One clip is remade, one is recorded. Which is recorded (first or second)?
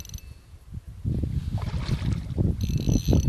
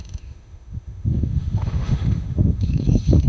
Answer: first